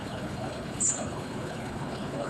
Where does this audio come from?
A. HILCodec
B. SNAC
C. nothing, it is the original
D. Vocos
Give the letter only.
A